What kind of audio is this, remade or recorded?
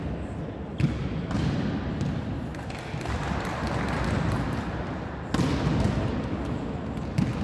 recorded